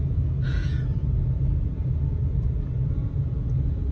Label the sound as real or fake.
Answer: fake